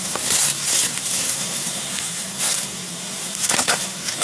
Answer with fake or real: fake